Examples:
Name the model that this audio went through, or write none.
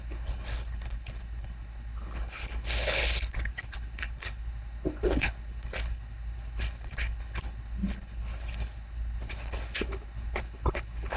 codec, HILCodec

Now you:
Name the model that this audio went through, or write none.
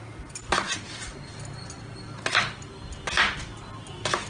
none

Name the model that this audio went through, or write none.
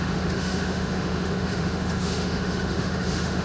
autoencoder, DAC-VAE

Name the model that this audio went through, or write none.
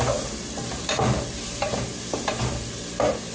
none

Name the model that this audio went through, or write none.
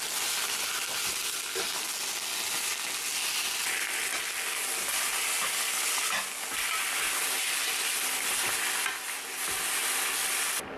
none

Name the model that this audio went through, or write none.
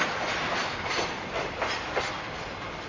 none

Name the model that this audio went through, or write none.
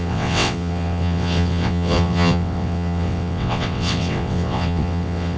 vocoder, WaveNeXt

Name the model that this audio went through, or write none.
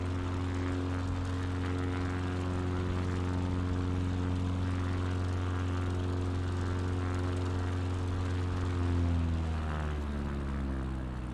none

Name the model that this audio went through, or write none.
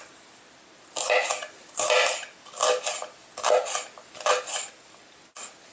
none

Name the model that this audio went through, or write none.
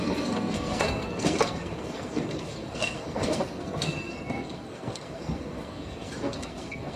codec, SNAC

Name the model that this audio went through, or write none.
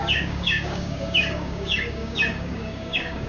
codec, DAC